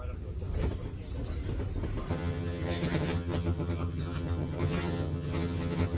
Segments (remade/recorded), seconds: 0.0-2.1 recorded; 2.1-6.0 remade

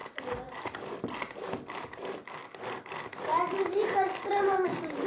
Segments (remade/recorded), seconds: 0.0-5.1 recorded

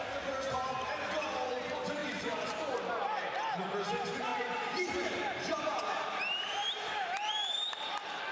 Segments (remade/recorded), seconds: 0.0-4.3 recorded; 4.3-7.9 remade; 7.9-8.3 recorded

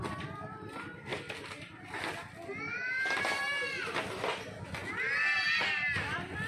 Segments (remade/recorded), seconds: 0.0-6.5 recorded

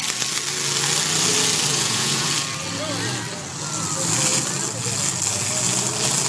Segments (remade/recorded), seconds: 0.0-1.7 recorded; 1.7-2.3 remade; 2.3-6.3 recorded